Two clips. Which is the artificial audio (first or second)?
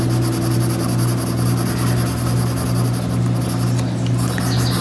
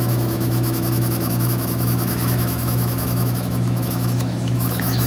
second